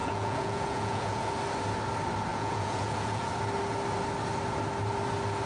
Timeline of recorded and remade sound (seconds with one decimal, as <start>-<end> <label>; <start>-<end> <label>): 0.0-1.3 remade; 1.3-2.3 recorded; 2.3-3.3 remade; 3.3-5.5 recorded